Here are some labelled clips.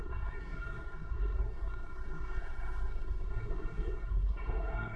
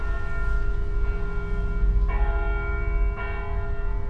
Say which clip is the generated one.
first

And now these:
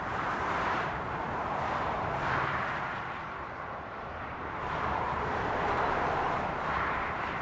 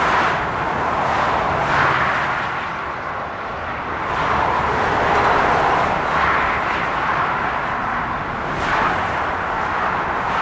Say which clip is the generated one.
first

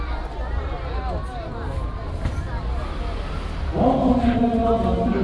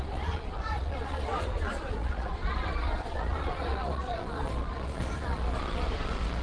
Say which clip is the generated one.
second